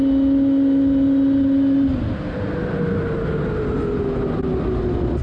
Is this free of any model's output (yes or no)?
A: yes